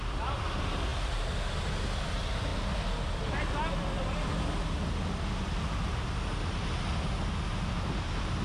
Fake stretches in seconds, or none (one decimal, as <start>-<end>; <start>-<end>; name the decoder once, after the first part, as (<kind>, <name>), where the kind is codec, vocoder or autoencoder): none